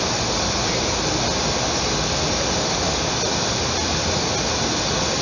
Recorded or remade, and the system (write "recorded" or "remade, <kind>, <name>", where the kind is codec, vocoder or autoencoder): recorded